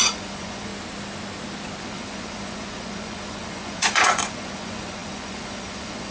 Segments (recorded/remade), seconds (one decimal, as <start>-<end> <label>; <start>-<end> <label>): 0.0-0.7 remade; 0.7-1.8 recorded; 1.8-6.1 remade

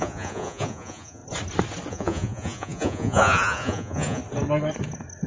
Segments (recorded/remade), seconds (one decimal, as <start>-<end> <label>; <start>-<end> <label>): 0.0-1.2 remade; 1.2-1.9 recorded; 1.9-4.2 remade; 4.2-5.3 recorded

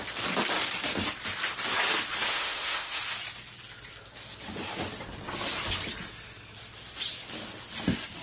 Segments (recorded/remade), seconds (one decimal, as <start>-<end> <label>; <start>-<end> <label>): 0.0-2.3 recorded; 2.3-3.0 remade; 3.0-8.2 recorded

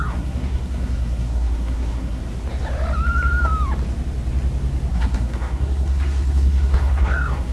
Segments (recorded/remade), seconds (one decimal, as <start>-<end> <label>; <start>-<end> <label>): 0.0-2.2 remade; 2.2-4.9 recorded; 4.9-7.5 remade

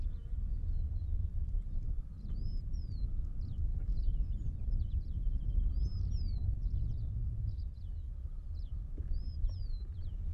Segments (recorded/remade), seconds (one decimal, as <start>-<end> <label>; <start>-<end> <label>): 0.0-5.2 remade; 5.2-8.9 recorded; 8.9-10.3 remade